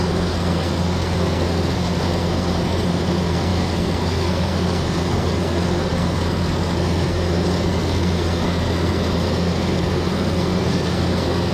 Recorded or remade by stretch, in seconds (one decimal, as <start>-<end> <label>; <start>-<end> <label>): 0.0-11.5 remade